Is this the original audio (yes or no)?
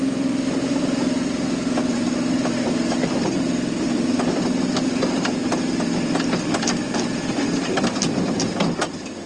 no